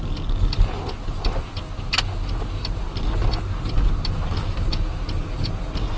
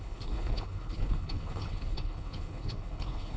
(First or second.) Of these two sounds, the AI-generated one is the second